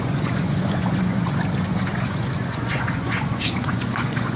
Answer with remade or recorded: remade